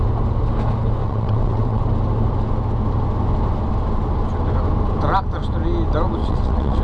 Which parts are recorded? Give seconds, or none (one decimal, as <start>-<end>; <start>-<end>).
0.0-1.0; 1.8-6.2